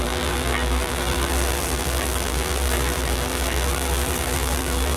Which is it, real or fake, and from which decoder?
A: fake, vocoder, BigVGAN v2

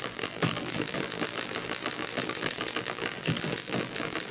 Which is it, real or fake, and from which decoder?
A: fake, vocoder, BigVGAN v2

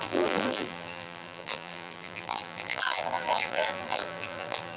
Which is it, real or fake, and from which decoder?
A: fake, vocoder, BigVGAN v2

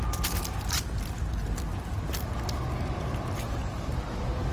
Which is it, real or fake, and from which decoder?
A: real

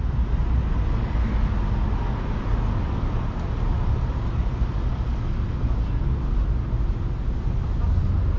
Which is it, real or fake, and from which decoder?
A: real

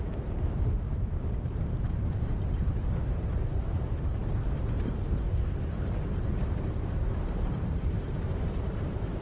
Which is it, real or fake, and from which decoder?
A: fake, vocoder, BigVGAN v2